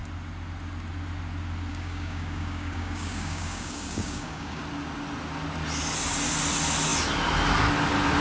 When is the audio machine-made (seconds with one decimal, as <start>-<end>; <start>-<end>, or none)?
1.7-4.6